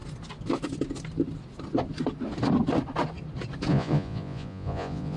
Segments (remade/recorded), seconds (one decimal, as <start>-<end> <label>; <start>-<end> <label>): 0.0-3.7 recorded; 3.7-5.2 remade